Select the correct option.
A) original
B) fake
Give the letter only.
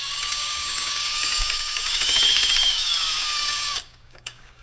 B